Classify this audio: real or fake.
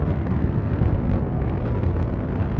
fake